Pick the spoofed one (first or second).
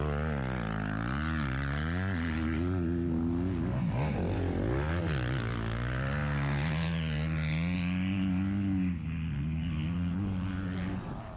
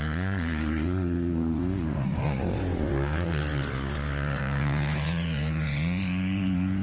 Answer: second